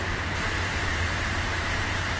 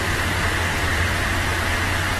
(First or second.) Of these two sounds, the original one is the second